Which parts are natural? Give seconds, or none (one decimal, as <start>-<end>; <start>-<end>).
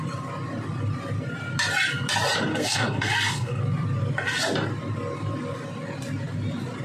0.0-2.5; 3.6-6.8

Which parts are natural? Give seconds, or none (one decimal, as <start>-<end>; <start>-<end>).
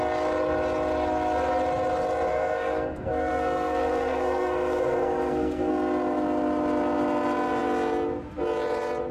0.0-2.3; 5.7-9.1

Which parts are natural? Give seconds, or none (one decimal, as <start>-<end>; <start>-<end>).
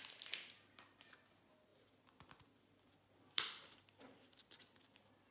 0.0-5.3